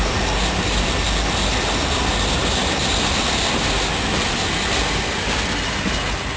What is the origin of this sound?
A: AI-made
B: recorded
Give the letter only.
B